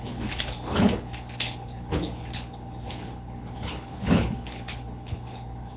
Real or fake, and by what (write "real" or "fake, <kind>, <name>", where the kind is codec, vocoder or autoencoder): fake, codec, HILCodec